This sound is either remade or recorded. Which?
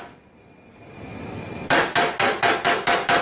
recorded